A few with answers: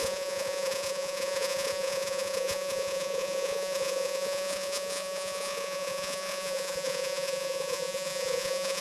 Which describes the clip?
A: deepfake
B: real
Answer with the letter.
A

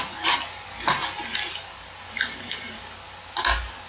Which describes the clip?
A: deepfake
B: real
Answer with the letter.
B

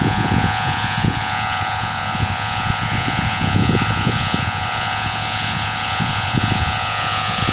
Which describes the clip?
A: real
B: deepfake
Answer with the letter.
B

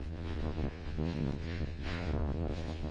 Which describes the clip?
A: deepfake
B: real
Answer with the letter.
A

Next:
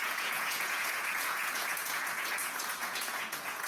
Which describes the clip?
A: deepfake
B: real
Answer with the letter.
A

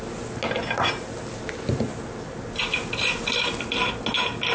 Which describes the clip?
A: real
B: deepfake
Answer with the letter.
A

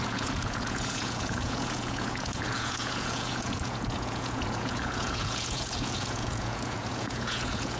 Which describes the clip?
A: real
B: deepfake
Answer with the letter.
B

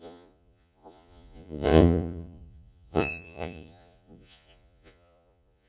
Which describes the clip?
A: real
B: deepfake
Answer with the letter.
B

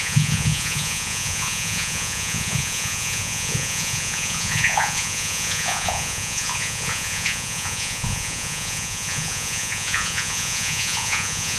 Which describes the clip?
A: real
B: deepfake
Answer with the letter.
B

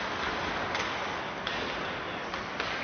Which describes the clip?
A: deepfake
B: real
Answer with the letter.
B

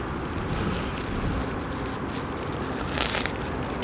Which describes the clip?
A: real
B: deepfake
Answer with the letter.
A